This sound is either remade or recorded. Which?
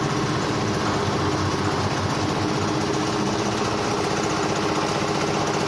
recorded